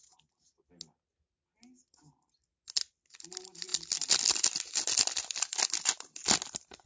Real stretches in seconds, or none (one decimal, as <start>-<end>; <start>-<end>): 0.0-6.9